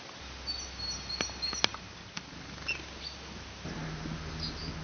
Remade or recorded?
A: recorded